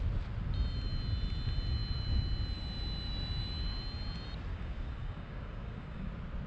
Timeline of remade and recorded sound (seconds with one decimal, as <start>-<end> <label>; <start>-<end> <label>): 0.0-4.5 recorded; 4.5-6.1 remade; 6.1-6.5 recorded